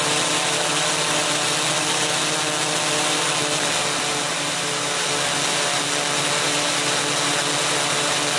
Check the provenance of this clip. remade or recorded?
recorded